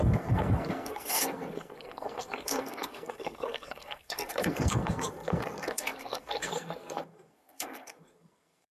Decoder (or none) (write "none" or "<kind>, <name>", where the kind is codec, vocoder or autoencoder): codec, SNAC